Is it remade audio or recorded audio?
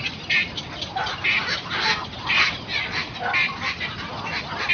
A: recorded